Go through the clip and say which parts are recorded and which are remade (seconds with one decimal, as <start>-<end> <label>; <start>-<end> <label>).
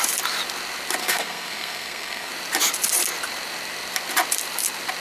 0.0-1.0 recorded; 1.0-2.3 remade; 2.3-5.0 recorded